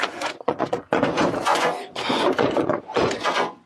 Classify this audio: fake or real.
fake